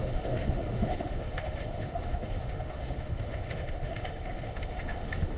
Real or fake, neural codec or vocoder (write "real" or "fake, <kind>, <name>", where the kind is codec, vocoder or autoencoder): fake, autoencoder, DAC-VAE